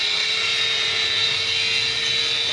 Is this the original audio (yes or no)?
yes